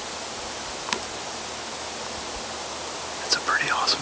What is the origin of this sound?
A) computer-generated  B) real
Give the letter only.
B